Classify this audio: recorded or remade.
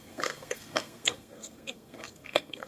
remade